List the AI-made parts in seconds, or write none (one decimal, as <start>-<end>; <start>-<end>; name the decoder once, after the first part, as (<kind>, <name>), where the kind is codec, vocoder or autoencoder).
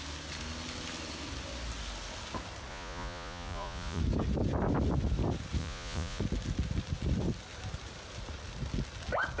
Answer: 2.7-4.0 (vocoder, Vocos); 5.6-6.2